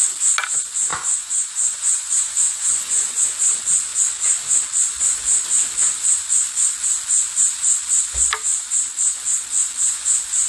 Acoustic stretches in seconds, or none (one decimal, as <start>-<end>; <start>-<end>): 0.0-0.9; 3.2-10.5